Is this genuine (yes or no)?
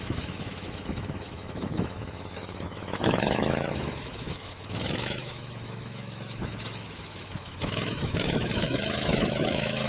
no